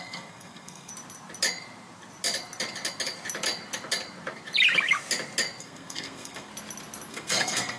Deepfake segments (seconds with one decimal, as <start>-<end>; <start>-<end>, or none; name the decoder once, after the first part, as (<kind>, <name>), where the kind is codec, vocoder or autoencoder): 0.0-0.9 (codec, SNAC); 5.6-6.5; 7.1-7.8